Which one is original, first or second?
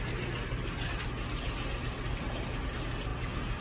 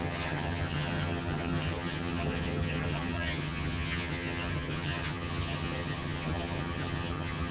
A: first